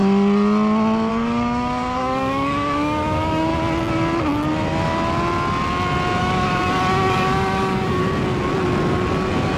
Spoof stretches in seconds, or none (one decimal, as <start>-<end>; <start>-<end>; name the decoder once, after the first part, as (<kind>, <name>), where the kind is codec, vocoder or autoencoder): 1.1-3.5 (codec, DAC); 6.2-8.0